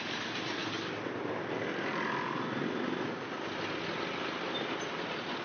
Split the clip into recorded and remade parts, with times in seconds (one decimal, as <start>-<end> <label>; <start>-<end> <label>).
0.0-5.4 recorded